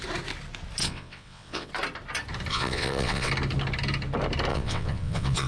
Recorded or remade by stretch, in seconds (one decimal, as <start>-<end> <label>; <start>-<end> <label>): 0.0-0.8 recorded; 0.8-1.7 remade; 1.7-2.5 recorded; 2.5-3.3 remade; 3.3-4.5 recorded; 4.5-5.5 remade